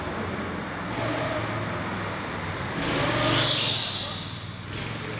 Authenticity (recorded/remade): recorded